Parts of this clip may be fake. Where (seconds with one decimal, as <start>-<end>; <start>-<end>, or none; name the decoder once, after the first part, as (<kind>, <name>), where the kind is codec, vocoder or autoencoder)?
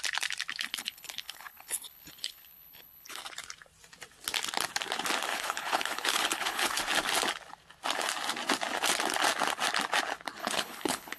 0.7-3.2 (codec, HILCodec); 5.3-6.8; 10.4-11.2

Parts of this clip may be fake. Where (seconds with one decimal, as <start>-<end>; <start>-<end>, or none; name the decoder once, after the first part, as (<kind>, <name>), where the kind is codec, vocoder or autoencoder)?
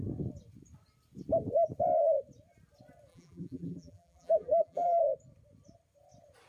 3.1-5.0 (vocoder, BigVGAN v2)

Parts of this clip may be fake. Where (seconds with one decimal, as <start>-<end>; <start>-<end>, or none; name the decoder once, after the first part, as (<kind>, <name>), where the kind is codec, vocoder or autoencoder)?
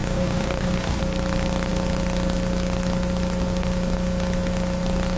0.0-1.0 (codec, DAC)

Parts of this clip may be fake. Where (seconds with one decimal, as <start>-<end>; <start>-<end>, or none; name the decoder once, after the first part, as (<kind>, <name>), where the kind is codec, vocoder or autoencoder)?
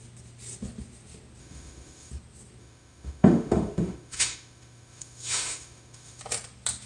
1.4-2.1 (autoencoder, DAC-VAE); 2.6-6.2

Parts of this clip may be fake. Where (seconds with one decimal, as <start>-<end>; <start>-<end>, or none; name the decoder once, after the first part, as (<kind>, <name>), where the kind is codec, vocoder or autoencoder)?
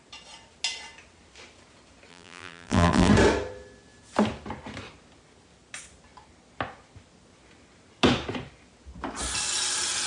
2.1-3.1 (vocoder, BigVGAN v2)